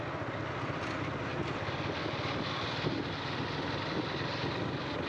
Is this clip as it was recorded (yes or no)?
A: yes